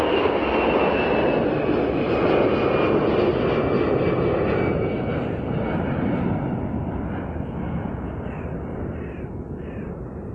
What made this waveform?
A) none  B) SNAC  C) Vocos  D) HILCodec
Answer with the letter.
A